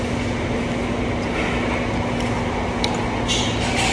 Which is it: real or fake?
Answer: real